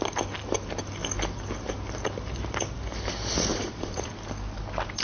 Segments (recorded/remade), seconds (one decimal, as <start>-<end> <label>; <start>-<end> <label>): 0.0-3.5 recorded; 3.5-4.1 remade; 4.1-5.0 recorded